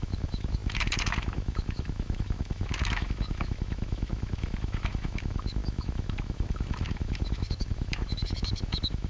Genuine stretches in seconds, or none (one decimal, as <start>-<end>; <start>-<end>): none